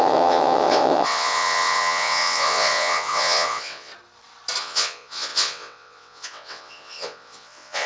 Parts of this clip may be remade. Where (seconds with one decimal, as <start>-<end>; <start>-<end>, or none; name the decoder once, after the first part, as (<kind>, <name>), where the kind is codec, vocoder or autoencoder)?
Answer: 0.0-3.9 (vocoder, WaveNeXt); 4.6-7.9